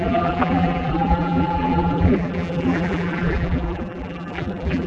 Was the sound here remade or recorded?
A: remade